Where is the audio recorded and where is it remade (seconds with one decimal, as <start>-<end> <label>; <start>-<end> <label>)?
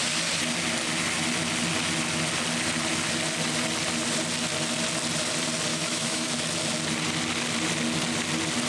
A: 0.0-5.7 recorded; 5.7-6.3 remade; 6.3-8.7 recorded